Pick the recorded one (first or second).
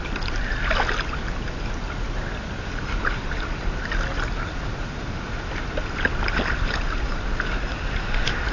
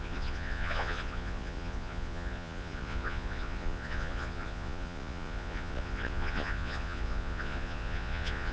first